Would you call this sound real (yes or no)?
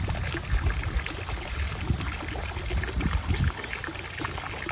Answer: yes